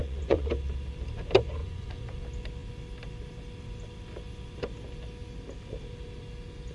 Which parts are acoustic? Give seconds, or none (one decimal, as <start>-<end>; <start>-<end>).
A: 0.5-1.6; 2.2-6.7